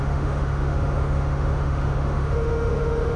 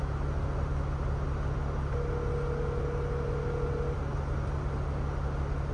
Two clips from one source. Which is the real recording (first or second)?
second